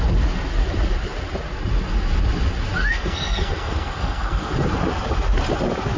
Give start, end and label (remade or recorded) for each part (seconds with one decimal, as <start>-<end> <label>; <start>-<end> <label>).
0.0-2.8 recorded; 2.8-4.5 remade; 4.5-6.0 recorded